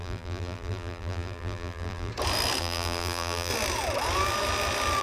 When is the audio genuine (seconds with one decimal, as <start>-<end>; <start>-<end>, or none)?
2.1-2.6; 3.5-5.0